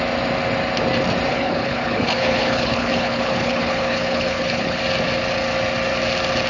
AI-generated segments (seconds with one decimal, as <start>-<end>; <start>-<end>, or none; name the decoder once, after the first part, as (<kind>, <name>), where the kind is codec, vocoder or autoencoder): 1.3-4.8 (codec, HILCodec)